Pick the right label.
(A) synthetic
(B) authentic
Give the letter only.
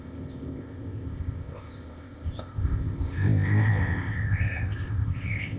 A